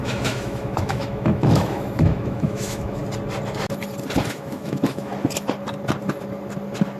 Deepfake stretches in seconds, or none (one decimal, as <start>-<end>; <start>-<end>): 0.0-3.0; 4.3-5.1